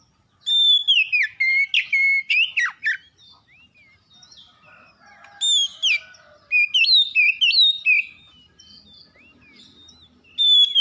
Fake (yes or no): no